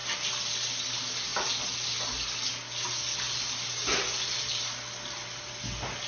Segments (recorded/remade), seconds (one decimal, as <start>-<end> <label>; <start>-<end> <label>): 0.0-6.1 recorded